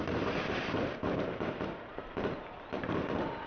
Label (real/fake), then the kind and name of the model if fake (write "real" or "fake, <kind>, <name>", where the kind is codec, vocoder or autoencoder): fake, vocoder, BigVGAN v2